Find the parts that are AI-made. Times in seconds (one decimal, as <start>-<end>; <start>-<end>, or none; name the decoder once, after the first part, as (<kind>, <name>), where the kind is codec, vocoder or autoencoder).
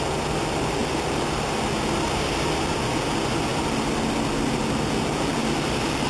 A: none